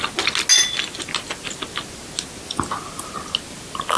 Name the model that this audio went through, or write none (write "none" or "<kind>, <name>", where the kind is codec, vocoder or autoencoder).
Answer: none